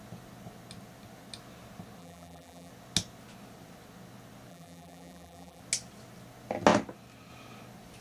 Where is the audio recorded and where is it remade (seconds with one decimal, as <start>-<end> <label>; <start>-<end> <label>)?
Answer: 0.0-2.0 recorded; 2.0-2.7 remade; 2.7-4.5 recorded; 4.5-5.6 remade; 5.6-8.0 recorded